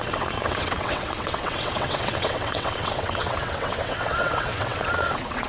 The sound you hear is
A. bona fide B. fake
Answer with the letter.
B